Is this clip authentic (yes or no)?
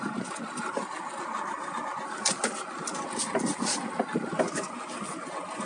yes